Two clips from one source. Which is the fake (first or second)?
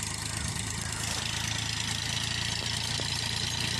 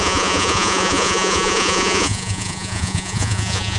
second